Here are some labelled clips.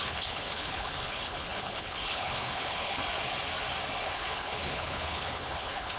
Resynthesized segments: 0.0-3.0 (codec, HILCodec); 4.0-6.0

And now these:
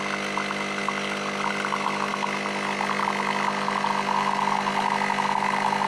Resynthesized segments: none

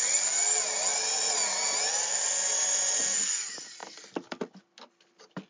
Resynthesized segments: none

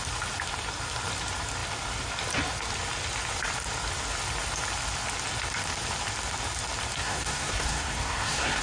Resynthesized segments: 7.0-8.6 (codec, SNAC)

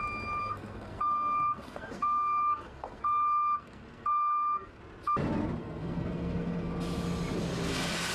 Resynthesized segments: 0.4-4.8 (codec, SNAC); 5.6-6.7

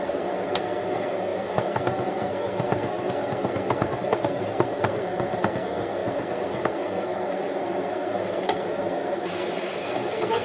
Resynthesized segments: 0.0-10.4 (codec, SNAC)